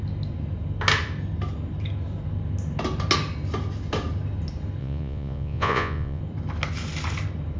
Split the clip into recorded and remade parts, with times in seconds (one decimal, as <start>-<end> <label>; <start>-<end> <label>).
0.0-4.8 recorded; 4.8-6.2 remade; 6.2-7.6 recorded